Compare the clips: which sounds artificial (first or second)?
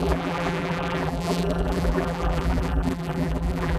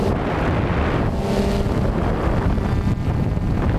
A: first